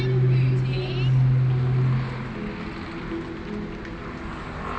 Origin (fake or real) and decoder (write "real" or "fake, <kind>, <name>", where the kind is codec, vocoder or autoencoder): real